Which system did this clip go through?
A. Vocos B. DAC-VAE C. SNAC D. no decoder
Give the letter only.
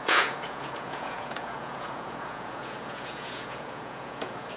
A